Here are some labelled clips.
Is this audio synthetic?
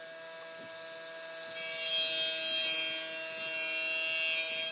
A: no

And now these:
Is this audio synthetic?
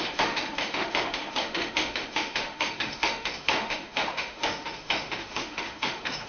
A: yes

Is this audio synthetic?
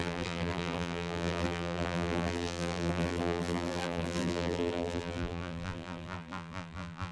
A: yes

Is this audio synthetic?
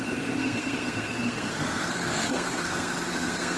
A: yes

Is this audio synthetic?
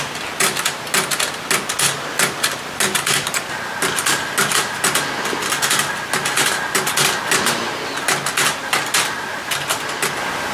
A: no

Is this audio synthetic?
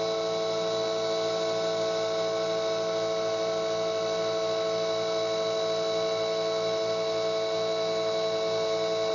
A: no